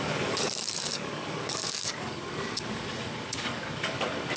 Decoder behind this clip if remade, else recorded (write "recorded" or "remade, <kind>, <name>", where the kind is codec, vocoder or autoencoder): remade, codec, DAC